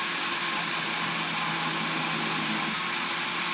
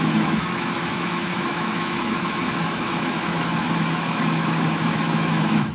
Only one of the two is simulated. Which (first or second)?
second